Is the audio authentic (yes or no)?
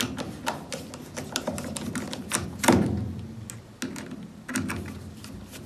yes